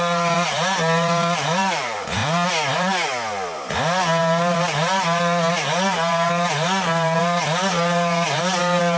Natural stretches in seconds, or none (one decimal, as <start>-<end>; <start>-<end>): 2.2-4.2